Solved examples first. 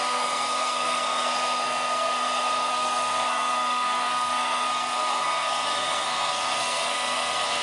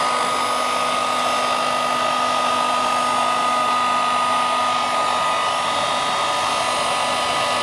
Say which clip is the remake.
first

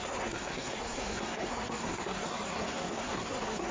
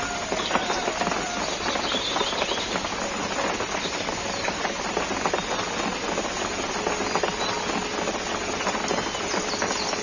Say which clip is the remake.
first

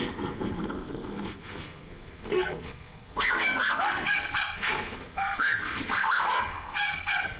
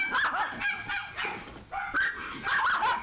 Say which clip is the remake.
first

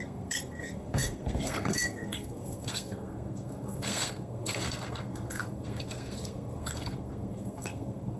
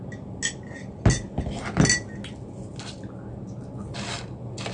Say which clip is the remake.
first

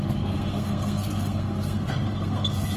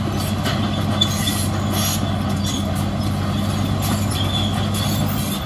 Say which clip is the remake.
first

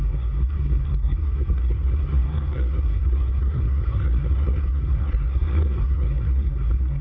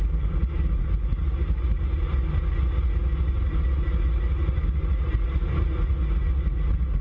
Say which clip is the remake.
first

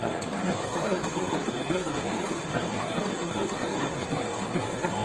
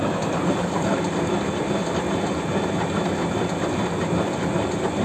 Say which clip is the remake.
first